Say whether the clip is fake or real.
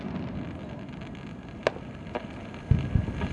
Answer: real